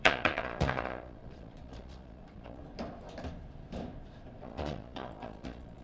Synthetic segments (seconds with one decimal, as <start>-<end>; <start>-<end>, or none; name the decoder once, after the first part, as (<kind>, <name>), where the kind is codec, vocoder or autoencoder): 0.0-2.6 (vocoder, Vocos); 4.4-5.8